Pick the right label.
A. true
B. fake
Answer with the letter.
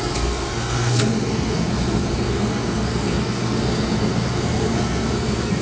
B